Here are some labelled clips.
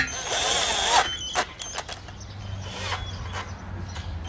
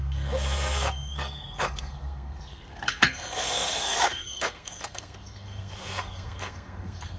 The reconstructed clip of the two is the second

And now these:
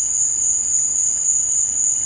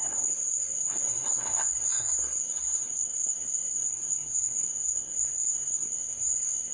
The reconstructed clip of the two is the second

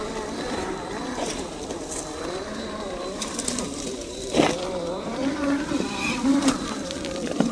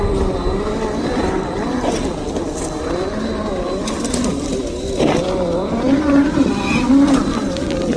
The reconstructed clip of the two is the first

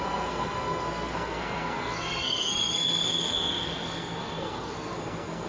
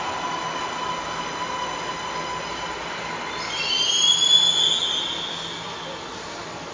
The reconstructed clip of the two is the first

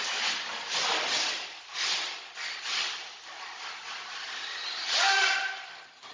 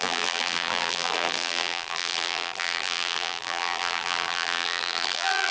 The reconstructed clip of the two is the second